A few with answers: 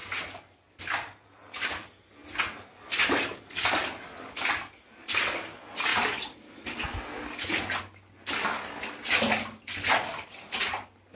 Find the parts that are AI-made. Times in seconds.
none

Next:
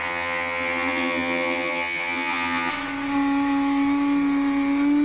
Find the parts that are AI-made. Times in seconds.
0.0-2.7 (vocoder, HiFi-GAN)